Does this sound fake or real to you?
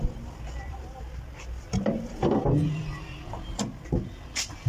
fake